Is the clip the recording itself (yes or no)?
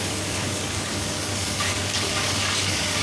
no